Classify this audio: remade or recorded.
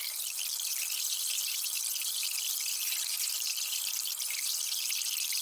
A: recorded